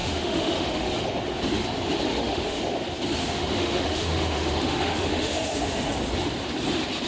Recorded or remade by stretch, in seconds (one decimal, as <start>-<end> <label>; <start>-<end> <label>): 0.0-0.9 remade; 0.9-2.1 recorded; 2.1-2.6 remade; 2.6-3.2 recorded; 3.2-5.9 remade; 5.9-7.1 recorded